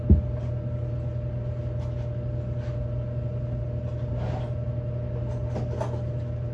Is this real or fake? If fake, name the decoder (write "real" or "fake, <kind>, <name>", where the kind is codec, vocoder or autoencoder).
real